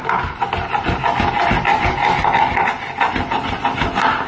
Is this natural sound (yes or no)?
yes